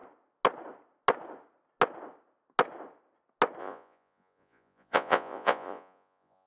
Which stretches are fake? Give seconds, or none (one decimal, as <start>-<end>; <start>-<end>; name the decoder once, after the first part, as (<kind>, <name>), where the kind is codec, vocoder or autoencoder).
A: 3.6-6.5 (vocoder, Vocos)